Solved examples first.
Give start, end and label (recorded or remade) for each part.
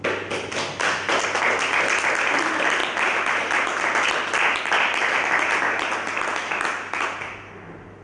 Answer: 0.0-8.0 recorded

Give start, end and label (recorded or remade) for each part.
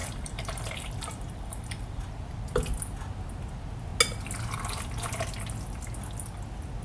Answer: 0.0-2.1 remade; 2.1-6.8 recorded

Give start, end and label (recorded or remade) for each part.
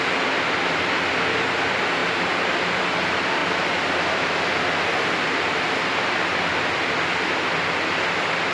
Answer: 0.0-2.0 recorded; 2.0-2.8 remade; 2.8-8.5 recorded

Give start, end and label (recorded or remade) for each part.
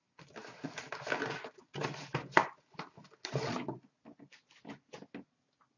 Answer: 0.0-0.4 recorded; 0.4-0.9 remade; 0.9-5.8 recorded